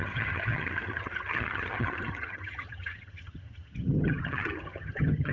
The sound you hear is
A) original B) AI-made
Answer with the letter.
B